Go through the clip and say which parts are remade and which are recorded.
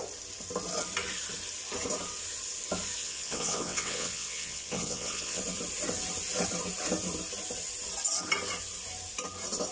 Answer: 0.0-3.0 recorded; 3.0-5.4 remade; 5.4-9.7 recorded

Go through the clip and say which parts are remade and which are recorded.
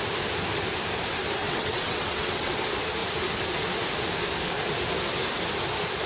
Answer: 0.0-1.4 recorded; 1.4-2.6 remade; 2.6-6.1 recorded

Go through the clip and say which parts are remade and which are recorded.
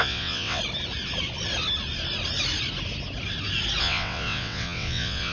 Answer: 0.0-0.6 remade; 0.6-3.8 recorded; 3.8-5.3 remade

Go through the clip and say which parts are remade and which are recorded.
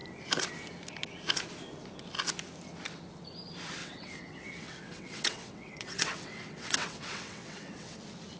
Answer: 0.0-3.8 recorded; 3.8-8.0 remade; 8.0-8.4 recorded